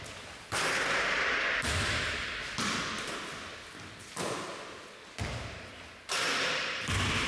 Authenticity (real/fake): fake